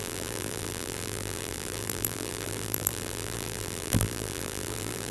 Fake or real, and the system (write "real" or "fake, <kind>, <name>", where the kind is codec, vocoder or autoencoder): fake, vocoder, BigVGAN v2